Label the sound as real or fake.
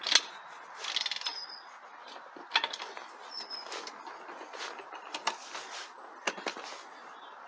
real